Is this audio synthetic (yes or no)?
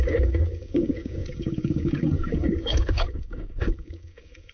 yes